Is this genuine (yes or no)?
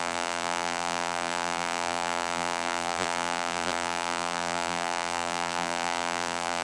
no